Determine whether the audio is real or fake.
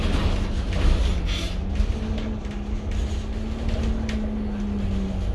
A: real